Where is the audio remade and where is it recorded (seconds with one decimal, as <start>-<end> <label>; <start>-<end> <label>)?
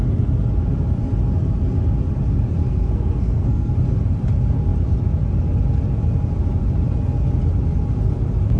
0.0-2.6 recorded; 2.6-3.7 remade; 3.7-8.6 recorded